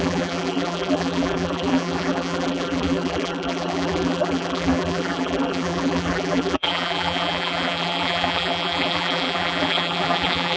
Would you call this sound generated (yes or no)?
yes